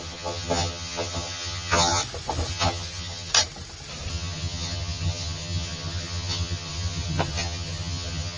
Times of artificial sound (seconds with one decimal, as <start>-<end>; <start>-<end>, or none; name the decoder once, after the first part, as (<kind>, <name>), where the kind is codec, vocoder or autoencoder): 0.0-2.0 (vocoder, HiFi-GAN); 2.5-3.3; 4.1-8.4